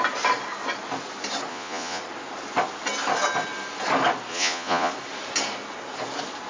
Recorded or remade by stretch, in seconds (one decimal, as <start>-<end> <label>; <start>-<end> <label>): 0.0-1.5 recorded; 1.5-2.0 remade; 2.0-4.3 recorded; 4.3-4.9 remade; 4.9-6.5 recorded